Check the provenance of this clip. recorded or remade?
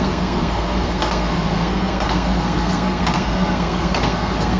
remade